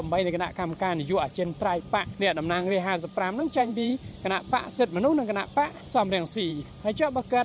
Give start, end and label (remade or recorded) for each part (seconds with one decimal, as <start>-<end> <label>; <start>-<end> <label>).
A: 0.0-3.9 remade; 3.9-6.5 recorded; 6.5-7.4 remade